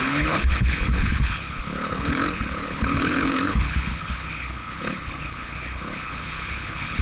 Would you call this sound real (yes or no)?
no